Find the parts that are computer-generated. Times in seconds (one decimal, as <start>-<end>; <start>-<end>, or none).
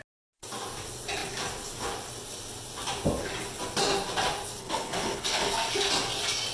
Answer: 4.6-5.5